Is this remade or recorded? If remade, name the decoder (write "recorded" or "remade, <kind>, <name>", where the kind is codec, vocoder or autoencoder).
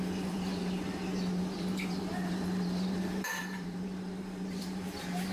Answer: remade, vocoder, BigVGAN v2